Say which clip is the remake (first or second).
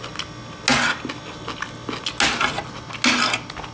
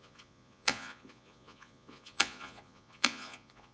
second